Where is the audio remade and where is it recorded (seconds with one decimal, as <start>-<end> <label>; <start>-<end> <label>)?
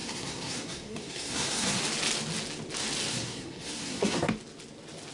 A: 0.0-1.8 remade; 1.8-3.1 recorded; 3.1-4.3 remade; 4.3-5.1 recorded